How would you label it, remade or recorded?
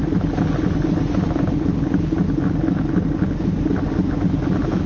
recorded